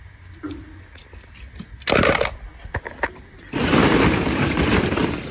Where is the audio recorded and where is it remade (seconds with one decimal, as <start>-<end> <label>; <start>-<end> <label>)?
0.0-5.3 recorded